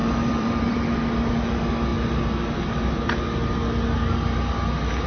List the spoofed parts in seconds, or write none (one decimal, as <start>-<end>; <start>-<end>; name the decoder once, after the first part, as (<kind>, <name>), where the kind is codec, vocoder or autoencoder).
0.0-1.3 (vocoder, BigVGAN v2)